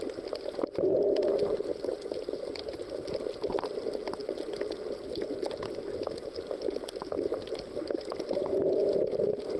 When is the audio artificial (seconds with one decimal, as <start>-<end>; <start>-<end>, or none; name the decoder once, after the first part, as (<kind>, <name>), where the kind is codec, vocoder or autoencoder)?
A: none